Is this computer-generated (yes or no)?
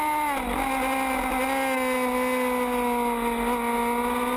no